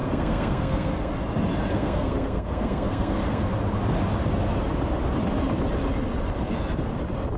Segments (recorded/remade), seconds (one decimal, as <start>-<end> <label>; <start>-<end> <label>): 0.0-1.1 remade; 1.1-1.7 recorded; 1.7-3.4 remade; 3.4-7.4 recorded